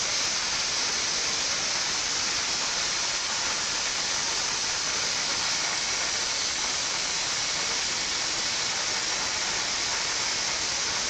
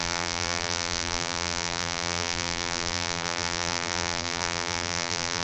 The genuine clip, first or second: first